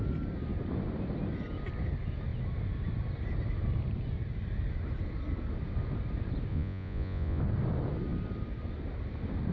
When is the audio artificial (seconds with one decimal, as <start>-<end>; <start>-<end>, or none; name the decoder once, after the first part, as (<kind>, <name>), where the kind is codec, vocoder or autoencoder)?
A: 6.5-7.4 (vocoder, Vocos)